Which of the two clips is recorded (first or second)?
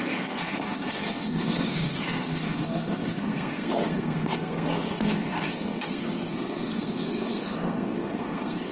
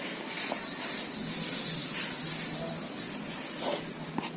second